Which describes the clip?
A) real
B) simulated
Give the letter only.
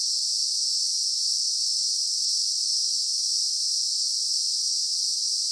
A